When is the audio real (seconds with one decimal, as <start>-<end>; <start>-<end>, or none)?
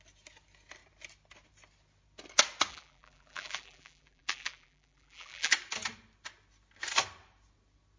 0.0-2.7; 5.5-8.0